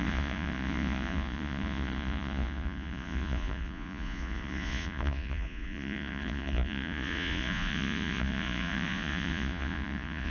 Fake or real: fake